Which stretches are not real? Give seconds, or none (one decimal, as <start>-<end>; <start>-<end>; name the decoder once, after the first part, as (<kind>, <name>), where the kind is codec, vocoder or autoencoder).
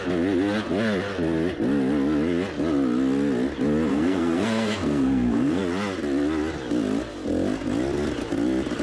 3.9-5.6 (codec, SNAC)